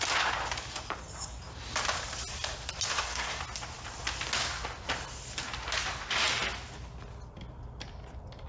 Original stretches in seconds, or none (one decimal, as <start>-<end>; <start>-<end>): 0.0-2.9; 3.4-8.5